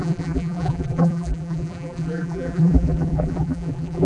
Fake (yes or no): yes